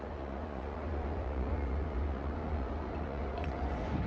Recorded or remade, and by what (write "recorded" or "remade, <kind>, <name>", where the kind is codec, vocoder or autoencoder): remade, vocoder, Vocos